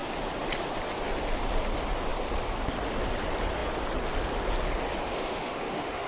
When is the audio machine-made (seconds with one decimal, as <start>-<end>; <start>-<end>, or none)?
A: 5.0-6.1